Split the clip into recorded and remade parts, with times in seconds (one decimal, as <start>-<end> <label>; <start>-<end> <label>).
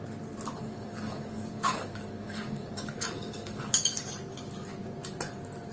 0.0-0.6 recorded; 0.6-4.0 remade; 4.0-5.7 recorded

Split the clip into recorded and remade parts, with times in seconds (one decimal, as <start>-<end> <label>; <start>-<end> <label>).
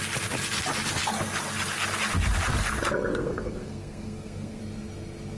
0.0-3.1 recorded; 3.1-4.6 remade; 4.6-5.4 recorded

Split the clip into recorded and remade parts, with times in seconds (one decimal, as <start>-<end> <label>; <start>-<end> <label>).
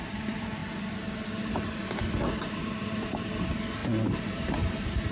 0.0-0.6 remade; 0.6-2.5 recorded; 2.5-5.1 remade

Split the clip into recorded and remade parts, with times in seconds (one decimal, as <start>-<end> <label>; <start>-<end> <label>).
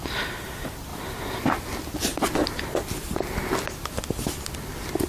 0.0-5.1 recorded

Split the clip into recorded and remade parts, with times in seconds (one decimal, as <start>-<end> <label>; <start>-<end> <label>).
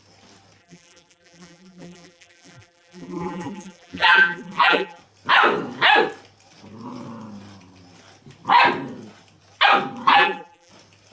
0.0-0.6 recorded; 0.6-5.0 remade; 5.0-10.1 recorded; 10.1-10.7 remade; 10.7-11.1 recorded